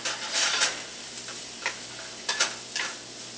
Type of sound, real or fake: real